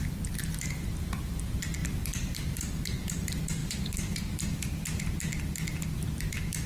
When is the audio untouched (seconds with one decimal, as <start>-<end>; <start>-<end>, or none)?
0.0-3.6; 5.1-6.7